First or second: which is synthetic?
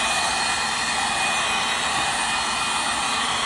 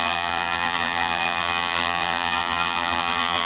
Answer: second